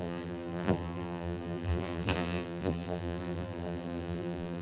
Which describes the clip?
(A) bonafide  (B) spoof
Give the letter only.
B